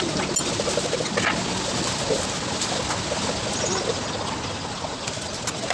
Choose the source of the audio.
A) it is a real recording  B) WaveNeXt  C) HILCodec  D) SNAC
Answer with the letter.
A